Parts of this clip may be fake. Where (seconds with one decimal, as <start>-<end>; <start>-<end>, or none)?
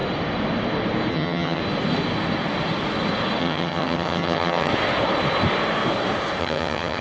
1.1-1.6; 3.4-4.7; 6.4-7.0